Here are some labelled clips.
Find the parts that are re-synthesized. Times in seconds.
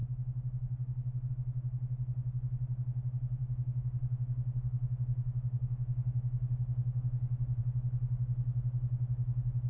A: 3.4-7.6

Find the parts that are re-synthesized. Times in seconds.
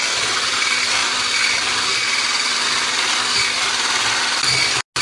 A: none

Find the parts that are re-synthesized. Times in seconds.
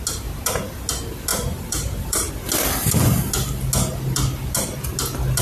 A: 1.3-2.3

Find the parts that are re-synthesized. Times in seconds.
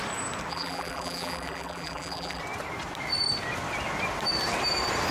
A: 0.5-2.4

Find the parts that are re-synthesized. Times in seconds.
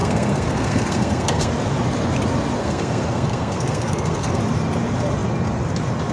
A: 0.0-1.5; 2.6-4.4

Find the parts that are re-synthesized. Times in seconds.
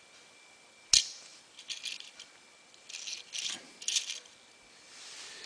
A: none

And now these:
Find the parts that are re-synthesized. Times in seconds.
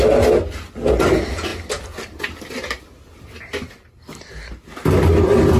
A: none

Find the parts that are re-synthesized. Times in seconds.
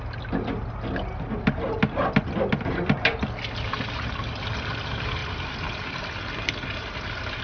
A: none